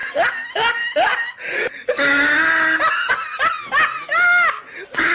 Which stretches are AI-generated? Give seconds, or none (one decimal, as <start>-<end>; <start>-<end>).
none